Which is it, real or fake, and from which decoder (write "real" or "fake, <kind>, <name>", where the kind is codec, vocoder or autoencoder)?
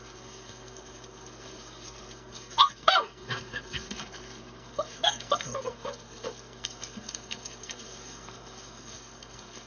fake, codec, SNAC